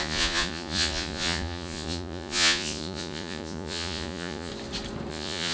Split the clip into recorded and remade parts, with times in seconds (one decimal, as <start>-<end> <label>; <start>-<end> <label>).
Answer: 0.0-4.5 remade; 4.5-5.1 recorded; 5.1-5.5 remade